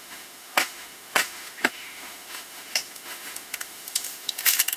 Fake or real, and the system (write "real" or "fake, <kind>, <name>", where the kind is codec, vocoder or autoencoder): fake, autoencoder, DAC-VAE